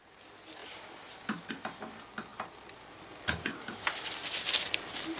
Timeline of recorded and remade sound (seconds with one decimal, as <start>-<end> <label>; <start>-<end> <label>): 0.0-0.6 recorded; 0.6-1.5 remade; 1.5-2.3 recorded; 2.3-5.2 remade